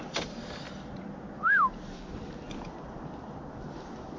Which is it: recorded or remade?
recorded